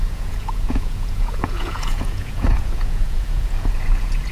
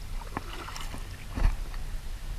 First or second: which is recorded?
second